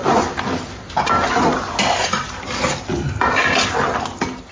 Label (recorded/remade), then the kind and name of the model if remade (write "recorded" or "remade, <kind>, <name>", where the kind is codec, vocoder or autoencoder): recorded